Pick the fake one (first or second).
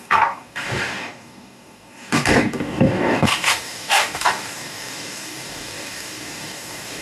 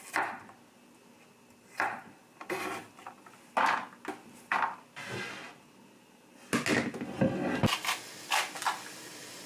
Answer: first